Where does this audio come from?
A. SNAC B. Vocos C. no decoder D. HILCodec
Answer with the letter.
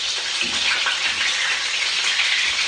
C